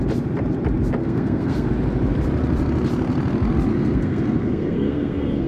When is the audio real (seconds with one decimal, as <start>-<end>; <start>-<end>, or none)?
0.0-1.0; 1.7-3.7